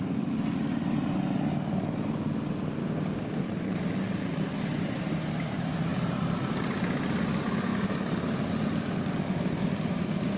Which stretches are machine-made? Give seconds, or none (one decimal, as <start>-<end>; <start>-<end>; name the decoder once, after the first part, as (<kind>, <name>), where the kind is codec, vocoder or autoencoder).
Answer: 2.8-3.4 (codec, DAC)